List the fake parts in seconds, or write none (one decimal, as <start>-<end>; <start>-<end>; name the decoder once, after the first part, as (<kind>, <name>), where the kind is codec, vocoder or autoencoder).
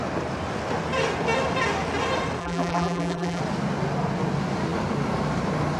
2.4-3.4 (vocoder, BigVGAN v2)